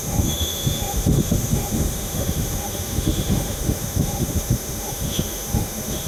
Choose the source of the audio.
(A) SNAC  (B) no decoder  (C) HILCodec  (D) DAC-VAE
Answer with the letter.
D